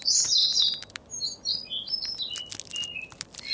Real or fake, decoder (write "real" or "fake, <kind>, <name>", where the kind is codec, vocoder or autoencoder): real